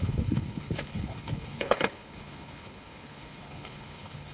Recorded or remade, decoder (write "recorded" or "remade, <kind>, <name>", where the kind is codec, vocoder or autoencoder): remade, codec, HILCodec